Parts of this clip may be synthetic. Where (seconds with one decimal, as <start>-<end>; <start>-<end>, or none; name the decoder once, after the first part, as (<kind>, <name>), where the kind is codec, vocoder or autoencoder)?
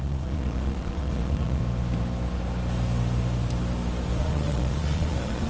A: 0.0-1.6 (vocoder, Vocos); 4.2-5.5